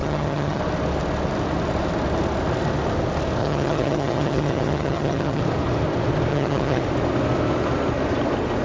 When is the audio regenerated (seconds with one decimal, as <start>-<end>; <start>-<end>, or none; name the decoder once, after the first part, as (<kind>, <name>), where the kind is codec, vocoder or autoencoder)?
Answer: 0.0-0.6 (vocoder, HiFi-GAN); 3.4-5.4; 6.3-6.8